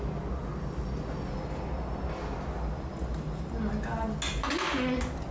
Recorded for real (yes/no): yes